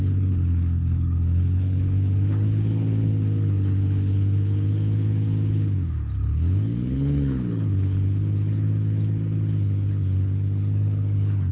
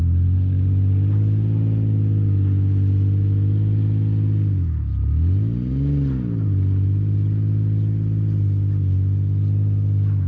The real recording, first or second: second